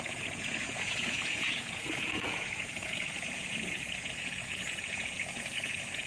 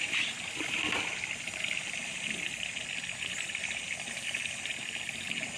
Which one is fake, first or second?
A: first